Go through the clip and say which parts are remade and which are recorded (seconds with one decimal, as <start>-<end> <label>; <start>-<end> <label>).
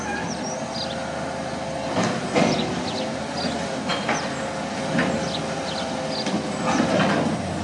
0.0-7.6 recorded